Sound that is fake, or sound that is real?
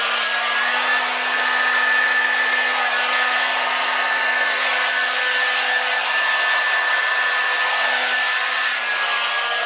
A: real